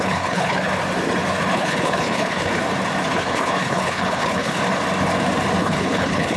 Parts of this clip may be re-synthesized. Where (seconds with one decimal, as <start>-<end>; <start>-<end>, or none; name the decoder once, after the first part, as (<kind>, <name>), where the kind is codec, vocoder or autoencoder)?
0.0-0.7 (codec, HILCodec); 1.4-2.6; 3.1-4.6; 5.6-6.4